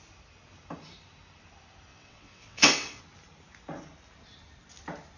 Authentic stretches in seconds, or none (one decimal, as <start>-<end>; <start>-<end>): 0.0-1.9; 3.0-5.2